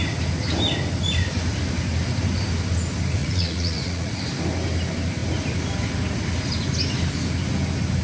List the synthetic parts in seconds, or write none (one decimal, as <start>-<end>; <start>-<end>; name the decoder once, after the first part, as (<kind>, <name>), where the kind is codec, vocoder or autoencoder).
3.2-4.2 (vocoder, Vocos)